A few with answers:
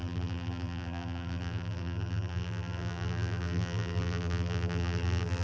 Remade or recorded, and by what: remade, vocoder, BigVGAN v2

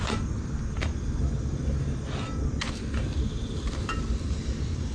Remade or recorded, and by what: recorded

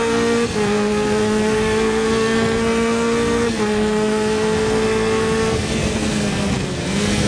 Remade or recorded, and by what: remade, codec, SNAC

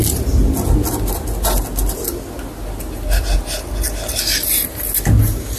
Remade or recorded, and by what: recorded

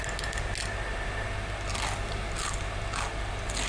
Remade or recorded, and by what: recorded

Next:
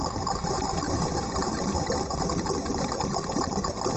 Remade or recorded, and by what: recorded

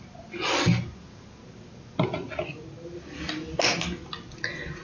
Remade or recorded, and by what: recorded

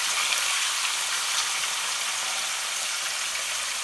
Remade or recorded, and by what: recorded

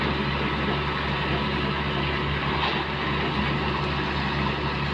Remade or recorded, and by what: recorded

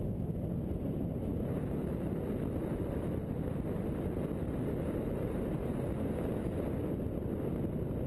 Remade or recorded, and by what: recorded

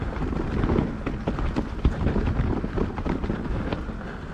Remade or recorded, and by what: recorded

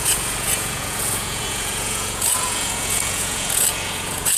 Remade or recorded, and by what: remade, vocoder, Vocos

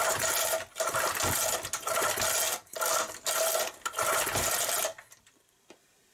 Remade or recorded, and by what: recorded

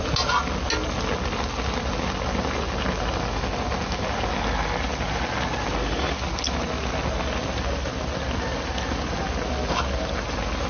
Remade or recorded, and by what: recorded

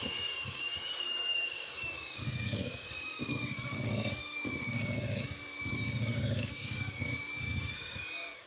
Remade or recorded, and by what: remade, codec, DAC